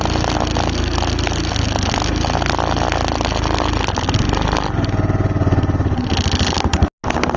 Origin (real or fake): real